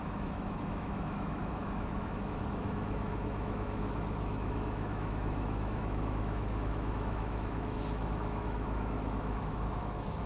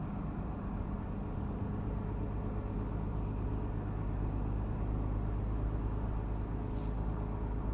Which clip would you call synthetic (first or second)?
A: first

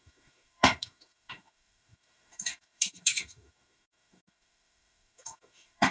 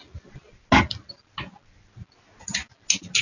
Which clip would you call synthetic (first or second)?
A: first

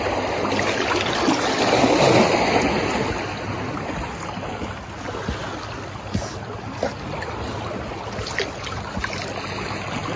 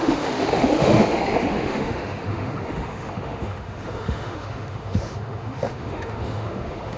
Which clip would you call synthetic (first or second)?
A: second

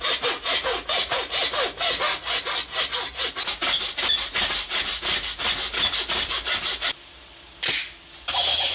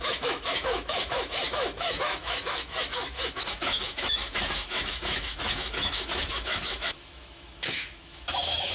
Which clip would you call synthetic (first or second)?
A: second